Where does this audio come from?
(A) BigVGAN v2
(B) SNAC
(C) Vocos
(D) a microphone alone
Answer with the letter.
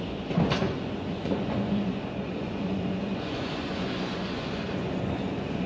C